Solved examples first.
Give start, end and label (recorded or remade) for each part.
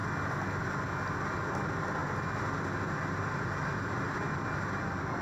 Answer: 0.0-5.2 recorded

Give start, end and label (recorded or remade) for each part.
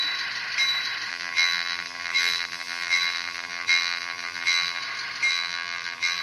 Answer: 0.0-1.1 recorded; 1.1-4.8 remade; 4.8-5.3 recorded; 5.3-6.2 remade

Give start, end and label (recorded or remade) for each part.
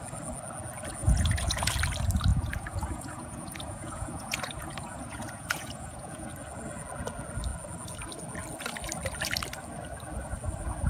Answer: 0.0-1.0 recorded; 1.0-1.7 remade; 1.7-2.3 recorded; 2.3-6.3 remade; 6.3-10.9 recorded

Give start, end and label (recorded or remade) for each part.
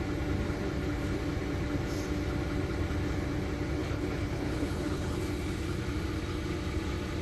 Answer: 0.0-3.8 recorded; 3.8-5.2 remade; 5.2-7.2 recorded